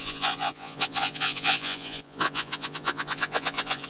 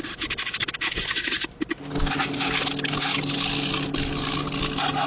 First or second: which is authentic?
second